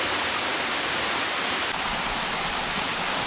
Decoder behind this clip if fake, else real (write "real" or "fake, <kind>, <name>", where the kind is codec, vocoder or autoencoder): real